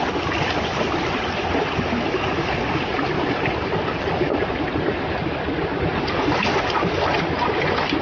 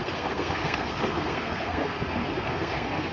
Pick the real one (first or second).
first